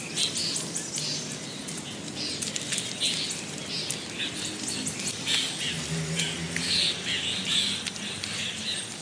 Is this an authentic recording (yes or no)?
yes